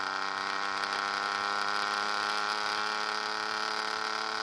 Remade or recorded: recorded